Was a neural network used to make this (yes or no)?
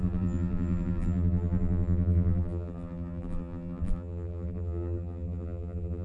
yes